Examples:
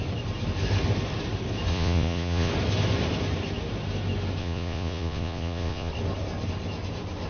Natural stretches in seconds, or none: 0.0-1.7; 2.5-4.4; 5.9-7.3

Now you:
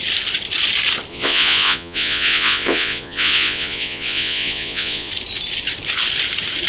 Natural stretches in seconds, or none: 0.0-1.1; 5.1-6.7

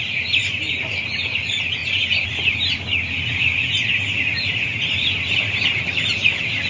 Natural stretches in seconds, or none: 0.0-6.7

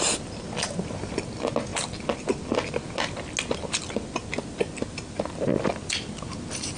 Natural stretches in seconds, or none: 0.0-6.8